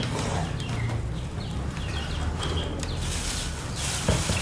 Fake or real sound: real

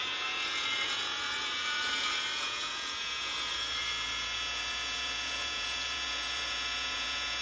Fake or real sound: fake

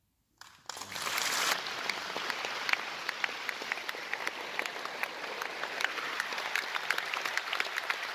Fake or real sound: real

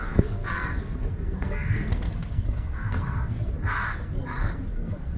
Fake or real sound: fake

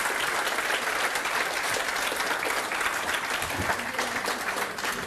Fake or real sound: fake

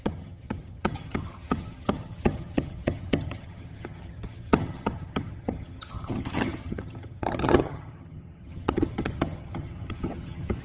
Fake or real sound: fake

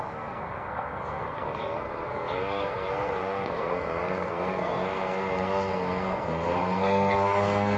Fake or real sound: fake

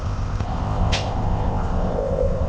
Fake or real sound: fake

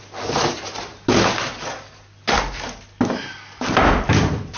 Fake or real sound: real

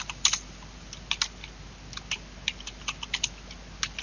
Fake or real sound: real